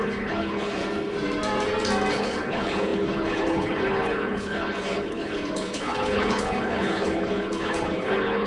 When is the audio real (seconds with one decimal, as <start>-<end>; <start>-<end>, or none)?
0.8-2.1